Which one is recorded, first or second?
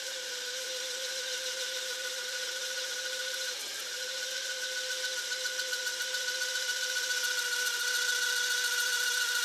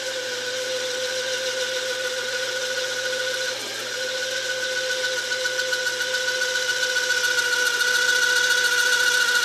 second